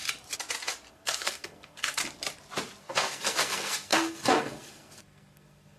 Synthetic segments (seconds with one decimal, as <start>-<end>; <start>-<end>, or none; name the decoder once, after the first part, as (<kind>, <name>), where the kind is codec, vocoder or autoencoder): 0.9-2.0 (codec, SNAC); 2.8-5.8